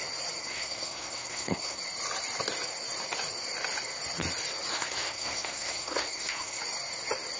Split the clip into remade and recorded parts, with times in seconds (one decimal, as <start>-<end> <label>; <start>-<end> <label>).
0.0-0.4 recorded; 0.4-1.8 remade; 1.8-4.7 recorded; 4.7-6.6 remade; 6.6-7.4 recorded